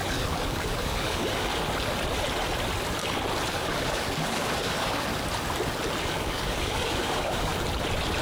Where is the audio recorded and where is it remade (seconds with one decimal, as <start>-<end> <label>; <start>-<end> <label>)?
0.0-1.5 remade; 1.5-3.5 recorded; 3.5-5.1 remade; 5.1-6.0 recorded; 6.0-7.5 remade; 7.5-8.2 recorded